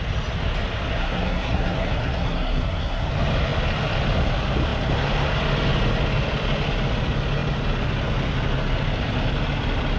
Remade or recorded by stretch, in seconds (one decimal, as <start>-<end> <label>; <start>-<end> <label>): 0.0-1.0 recorded; 1.0-3.1 remade; 3.1-10.0 recorded